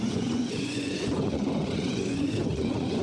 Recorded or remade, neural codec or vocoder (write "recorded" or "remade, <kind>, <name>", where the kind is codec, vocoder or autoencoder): remade, vocoder, Vocos